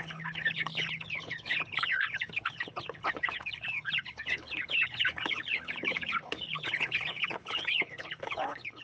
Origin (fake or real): fake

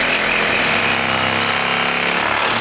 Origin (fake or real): real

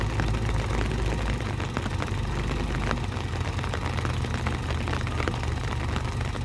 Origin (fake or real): real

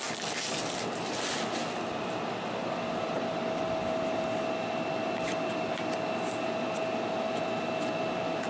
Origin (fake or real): real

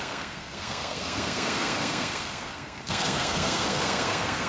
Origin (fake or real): fake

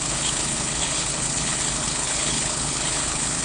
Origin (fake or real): fake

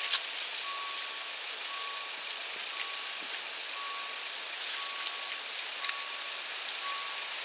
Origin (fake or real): real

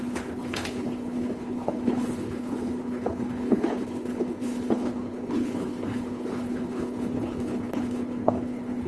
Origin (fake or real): fake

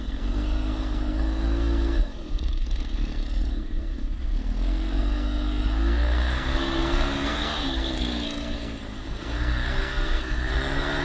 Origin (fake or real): fake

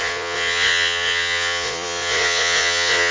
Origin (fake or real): fake